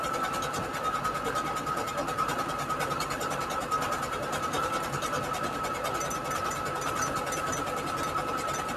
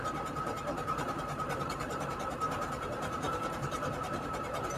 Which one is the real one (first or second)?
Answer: first